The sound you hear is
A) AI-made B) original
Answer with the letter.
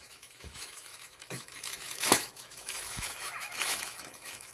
A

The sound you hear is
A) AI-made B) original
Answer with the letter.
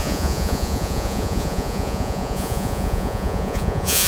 A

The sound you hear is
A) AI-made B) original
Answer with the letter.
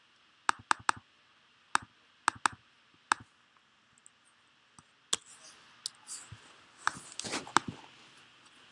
B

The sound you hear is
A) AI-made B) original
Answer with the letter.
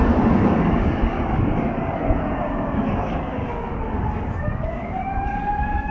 A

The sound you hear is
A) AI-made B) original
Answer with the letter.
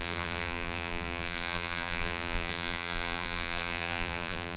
A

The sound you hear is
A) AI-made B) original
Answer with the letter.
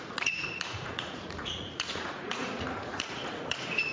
A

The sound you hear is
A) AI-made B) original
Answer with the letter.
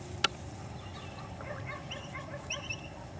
B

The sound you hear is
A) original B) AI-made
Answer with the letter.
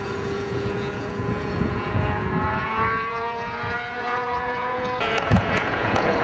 B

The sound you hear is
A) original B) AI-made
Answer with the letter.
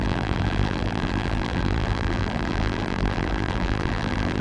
B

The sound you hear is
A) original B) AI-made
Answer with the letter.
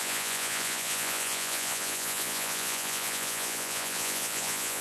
B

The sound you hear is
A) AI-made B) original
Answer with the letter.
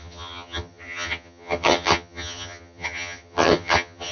A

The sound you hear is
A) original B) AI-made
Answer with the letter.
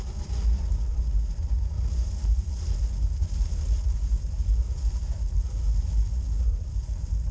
A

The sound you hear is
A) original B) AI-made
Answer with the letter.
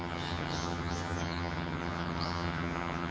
B